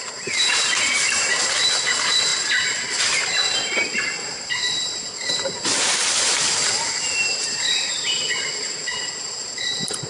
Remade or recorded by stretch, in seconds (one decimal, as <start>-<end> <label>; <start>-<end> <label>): 0.0-2.3 remade; 2.3-3.0 recorded; 3.0-3.4 remade; 3.4-4.0 recorded; 4.0-10.1 remade